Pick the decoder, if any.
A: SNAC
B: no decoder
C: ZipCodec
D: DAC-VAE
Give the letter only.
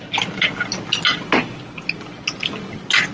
B